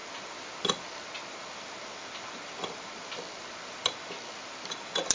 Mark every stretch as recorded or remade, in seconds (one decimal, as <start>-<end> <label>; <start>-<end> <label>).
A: 0.0-5.1 recorded